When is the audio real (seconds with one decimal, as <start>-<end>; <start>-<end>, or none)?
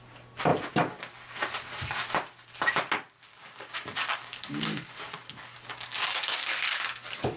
0.0-3.3